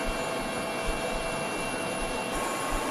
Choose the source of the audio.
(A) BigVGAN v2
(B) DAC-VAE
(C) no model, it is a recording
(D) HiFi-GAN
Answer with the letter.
C